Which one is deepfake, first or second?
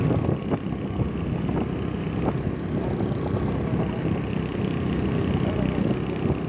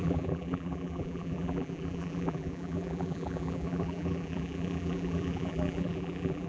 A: second